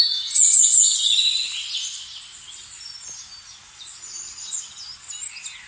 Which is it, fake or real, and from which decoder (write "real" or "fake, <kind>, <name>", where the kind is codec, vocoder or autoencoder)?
real